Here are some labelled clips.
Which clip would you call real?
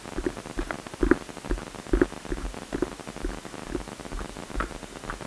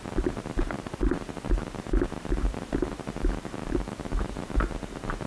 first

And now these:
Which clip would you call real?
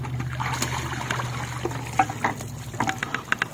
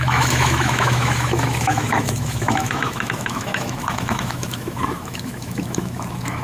first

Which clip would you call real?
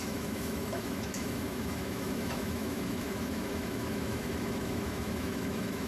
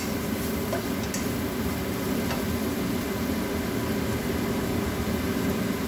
second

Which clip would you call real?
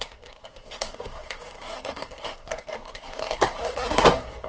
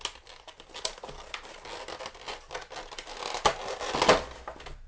second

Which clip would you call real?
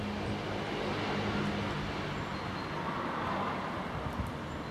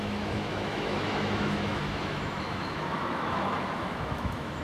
first